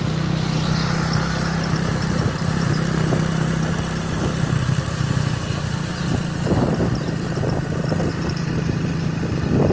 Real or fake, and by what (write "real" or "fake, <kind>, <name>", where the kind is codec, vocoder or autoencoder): real